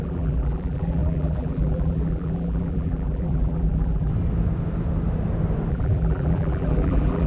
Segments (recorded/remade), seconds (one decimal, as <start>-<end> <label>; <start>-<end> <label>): 0.0-4.1 remade; 4.1-5.7 recorded; 5.7-7.3 remade